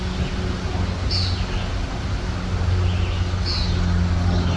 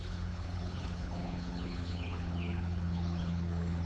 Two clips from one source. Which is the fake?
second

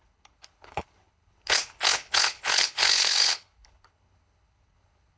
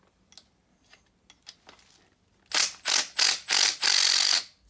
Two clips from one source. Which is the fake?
first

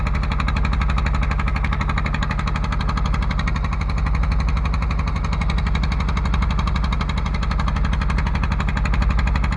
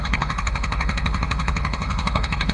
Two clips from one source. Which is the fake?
second